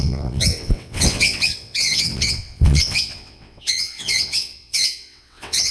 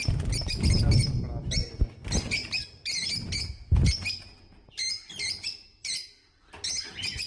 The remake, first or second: first